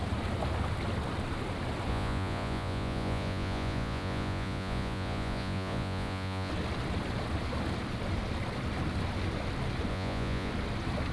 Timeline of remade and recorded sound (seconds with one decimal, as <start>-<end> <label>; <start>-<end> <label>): 0.0-1.9 recorded; 1.9-6.5 remade; 6.5-9.9 recorded; 9.9-10.5 remade; 10.5-11.1 recorded